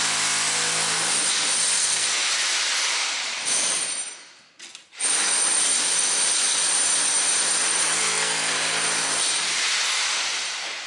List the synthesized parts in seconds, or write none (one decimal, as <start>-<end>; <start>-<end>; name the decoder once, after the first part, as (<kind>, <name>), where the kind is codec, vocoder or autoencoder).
1.8-2.3 (codec, SNAC); 7.8-8.5